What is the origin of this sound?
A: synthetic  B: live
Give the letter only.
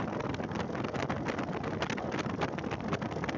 B